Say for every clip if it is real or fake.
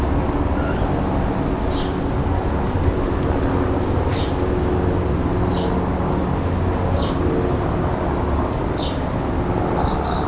real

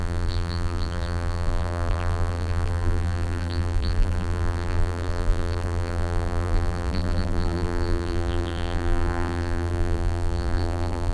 fake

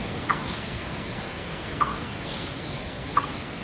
fake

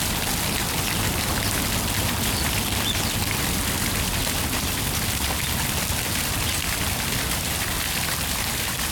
real